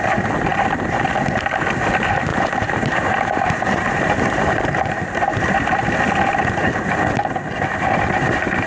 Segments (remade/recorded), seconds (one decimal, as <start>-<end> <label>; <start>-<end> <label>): 0.0-2.3 recorded; 2.3-5.0 remade; 5.0-8.7 recorded